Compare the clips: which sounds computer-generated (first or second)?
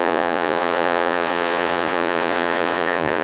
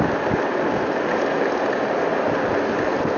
first